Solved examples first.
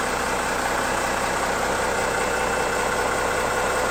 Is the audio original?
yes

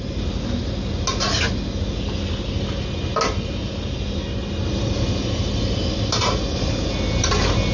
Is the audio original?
yes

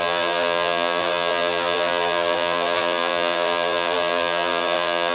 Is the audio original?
no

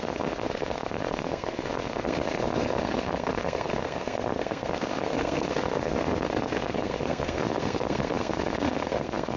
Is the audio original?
no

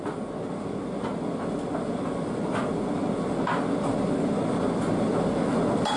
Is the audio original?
yes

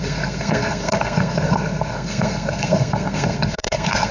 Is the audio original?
no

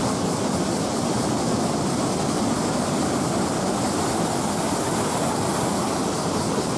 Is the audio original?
yes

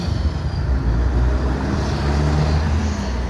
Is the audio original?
yes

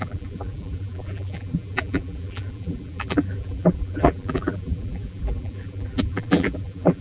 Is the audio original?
no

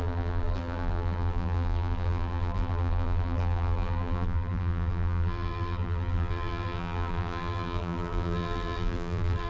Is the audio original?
no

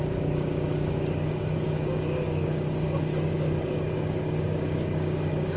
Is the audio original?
no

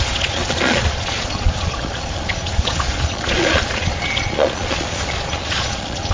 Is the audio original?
no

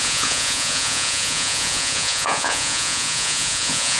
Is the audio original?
no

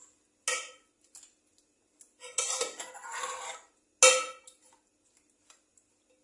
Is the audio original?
yes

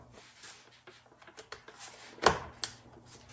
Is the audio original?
yes